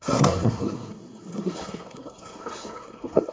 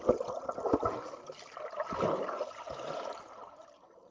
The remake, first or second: first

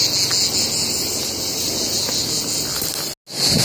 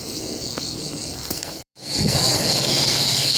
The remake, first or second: second